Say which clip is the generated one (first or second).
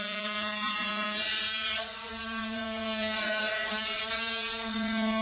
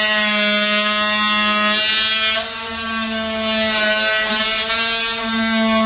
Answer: first